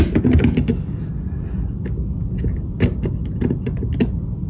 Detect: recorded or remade recorded